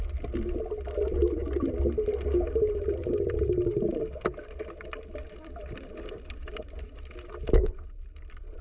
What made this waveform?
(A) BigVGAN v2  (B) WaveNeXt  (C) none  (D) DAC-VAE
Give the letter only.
C